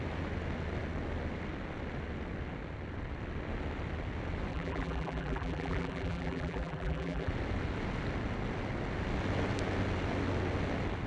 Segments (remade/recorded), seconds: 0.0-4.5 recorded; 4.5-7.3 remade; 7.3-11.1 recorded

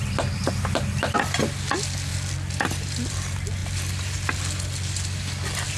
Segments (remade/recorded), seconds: 0.0-5.8 recorded